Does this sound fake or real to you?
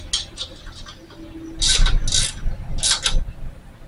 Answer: real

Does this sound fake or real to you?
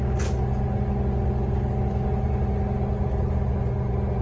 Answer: real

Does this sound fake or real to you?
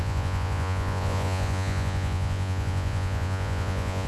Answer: fake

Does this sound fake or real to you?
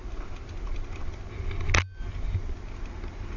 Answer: real